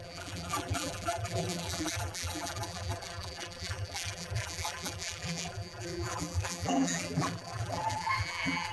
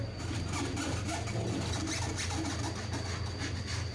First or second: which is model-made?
first